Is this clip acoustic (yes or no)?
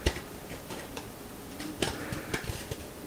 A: no